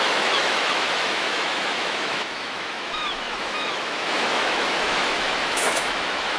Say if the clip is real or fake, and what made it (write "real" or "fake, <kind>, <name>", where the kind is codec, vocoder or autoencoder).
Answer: fake, autoencoder, DAC-VAE